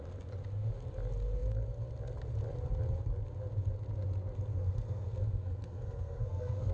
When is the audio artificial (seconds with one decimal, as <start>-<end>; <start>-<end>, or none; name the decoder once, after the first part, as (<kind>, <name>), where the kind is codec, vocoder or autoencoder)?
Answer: 4.5-6.7 (codec, SNAC)